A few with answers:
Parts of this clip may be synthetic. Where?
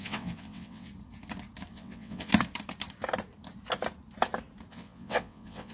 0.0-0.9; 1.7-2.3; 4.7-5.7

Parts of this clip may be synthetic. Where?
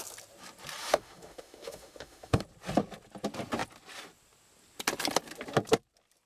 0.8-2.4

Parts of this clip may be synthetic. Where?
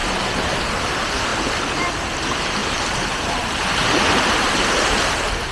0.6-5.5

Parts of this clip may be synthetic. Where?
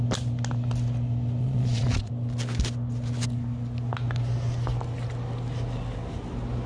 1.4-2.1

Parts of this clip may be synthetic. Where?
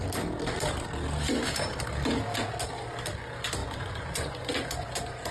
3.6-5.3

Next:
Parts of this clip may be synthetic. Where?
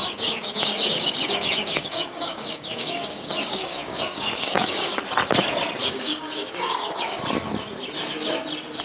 0.0-5.0; 5.8-7.2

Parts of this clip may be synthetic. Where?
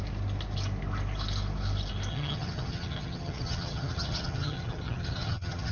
2.1-5.7